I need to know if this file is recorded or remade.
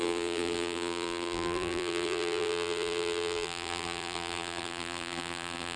remade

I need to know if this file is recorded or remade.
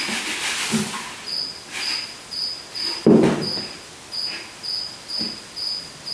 recorded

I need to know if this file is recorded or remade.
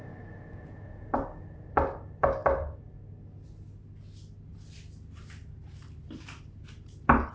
recorded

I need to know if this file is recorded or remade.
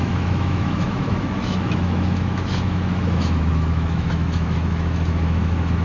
remade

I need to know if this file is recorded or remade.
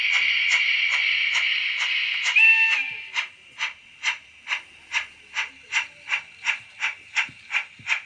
recorded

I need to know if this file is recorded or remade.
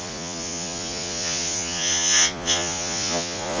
remade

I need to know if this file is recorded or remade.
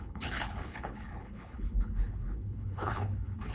remade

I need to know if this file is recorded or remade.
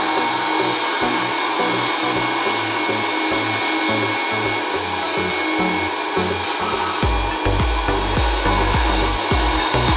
recorded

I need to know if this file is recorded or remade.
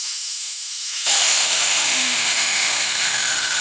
remade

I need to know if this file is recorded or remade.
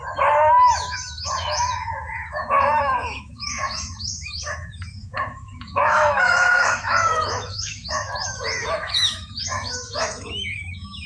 remade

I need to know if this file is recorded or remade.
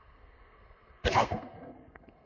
remade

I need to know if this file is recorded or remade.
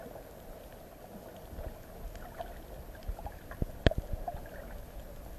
recorded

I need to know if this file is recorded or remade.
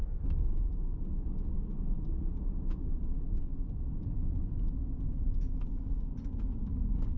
recorded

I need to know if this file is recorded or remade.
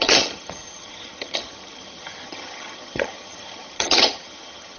remade